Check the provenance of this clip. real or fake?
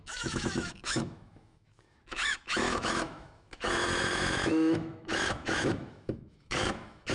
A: fake